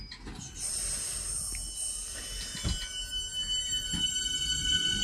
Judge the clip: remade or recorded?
recorded